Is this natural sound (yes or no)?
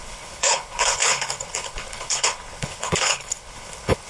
no